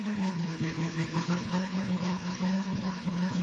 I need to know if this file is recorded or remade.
remade